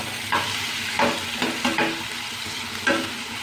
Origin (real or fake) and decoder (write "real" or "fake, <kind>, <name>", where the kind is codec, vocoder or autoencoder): real